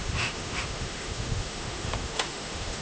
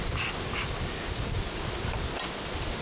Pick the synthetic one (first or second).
first